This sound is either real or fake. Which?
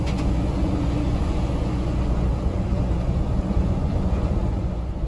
fake